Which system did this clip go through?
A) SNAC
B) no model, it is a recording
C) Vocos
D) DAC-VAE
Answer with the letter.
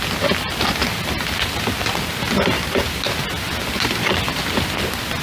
B